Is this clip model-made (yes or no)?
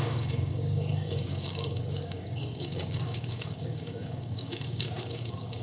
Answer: yes